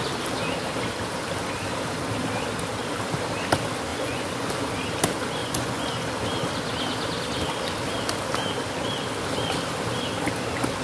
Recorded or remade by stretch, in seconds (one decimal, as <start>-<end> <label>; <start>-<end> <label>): 0.0-3.9 recorded; 3.9-4.5 remade; 4.5-5.4 recorded; 5.4-6.1 remade; 6.1-10.8 recorded